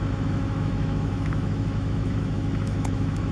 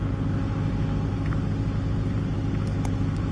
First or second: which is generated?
first